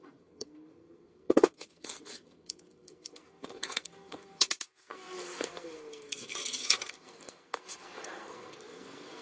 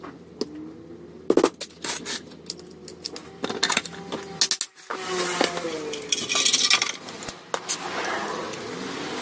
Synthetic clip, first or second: first